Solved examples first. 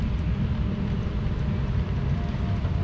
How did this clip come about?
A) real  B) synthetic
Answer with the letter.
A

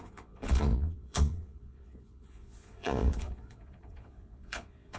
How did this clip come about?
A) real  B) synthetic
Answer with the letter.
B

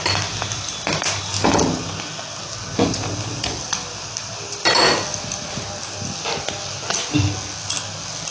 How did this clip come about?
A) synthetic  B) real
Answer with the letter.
B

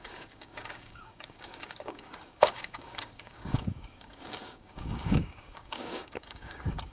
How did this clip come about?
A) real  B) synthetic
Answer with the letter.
B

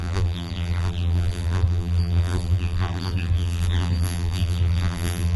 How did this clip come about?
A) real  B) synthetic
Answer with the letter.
B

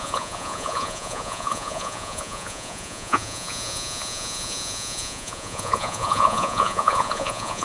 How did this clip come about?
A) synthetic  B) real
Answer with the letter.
A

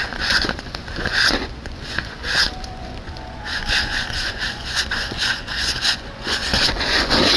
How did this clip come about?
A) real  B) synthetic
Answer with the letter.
B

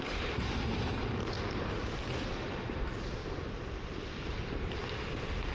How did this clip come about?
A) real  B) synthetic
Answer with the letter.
A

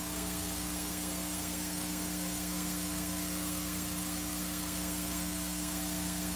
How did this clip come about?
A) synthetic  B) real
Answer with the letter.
A